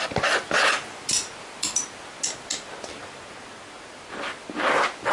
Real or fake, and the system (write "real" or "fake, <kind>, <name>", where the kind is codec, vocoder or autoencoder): real